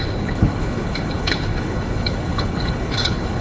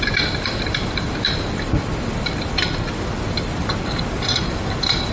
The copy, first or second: first